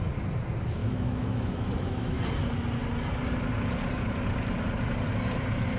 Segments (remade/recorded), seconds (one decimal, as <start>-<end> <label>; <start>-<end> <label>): 0.0-0.8 recorded; 0.8-2.2 remade; 2.2-5.8 recorded